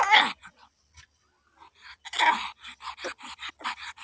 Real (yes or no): yes